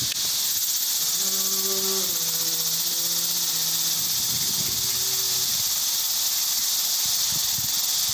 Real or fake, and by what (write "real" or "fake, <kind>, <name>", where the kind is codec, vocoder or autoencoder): real